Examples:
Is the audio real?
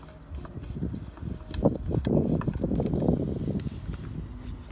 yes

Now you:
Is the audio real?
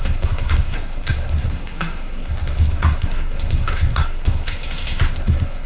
no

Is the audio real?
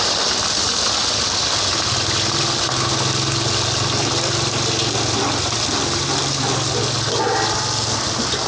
yes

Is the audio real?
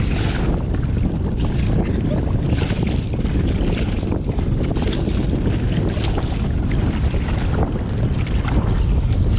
yes